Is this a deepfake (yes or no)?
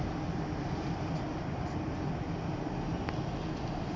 no